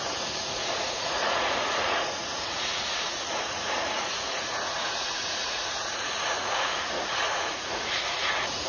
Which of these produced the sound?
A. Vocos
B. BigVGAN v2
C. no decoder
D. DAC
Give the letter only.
A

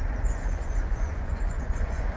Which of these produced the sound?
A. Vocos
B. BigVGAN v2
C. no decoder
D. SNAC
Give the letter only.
A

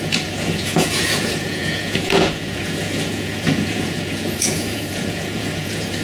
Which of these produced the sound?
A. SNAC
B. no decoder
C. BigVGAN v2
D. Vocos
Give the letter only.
D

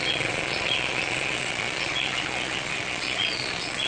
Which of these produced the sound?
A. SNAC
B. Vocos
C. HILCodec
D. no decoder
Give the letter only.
B